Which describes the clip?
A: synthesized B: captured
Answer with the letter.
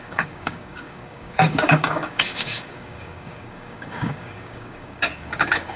A